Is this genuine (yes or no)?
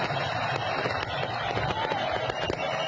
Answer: no